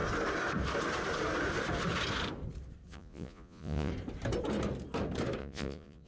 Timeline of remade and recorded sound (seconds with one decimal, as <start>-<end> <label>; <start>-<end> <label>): 0.0-2.9 recorded; 2.9-3.9 remade; 3.9-5.4 recorded; 5.4-6.1 remade